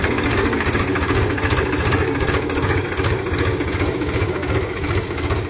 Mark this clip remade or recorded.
remade